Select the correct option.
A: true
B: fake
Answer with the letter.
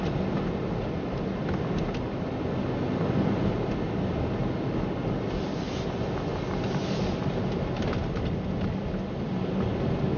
A